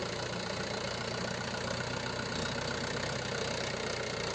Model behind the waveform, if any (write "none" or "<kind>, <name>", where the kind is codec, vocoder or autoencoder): none